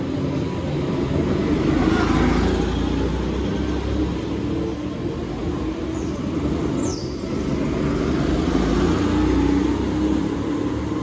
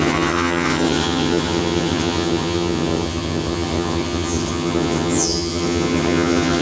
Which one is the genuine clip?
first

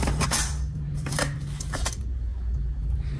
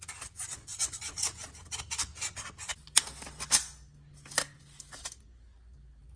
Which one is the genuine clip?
second